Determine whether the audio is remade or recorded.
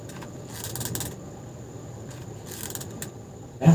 recorded